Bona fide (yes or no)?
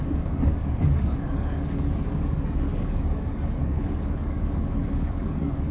no